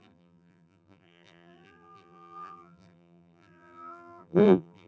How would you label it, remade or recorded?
remade